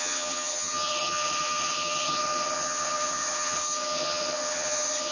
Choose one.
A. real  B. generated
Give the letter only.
B